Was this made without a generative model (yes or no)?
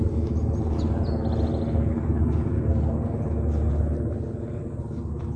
yes